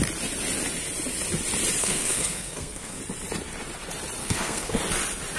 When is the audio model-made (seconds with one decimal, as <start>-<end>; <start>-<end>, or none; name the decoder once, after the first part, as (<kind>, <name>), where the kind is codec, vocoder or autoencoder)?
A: 1.8-3.0 (codec, SNAC); 4.2-4.8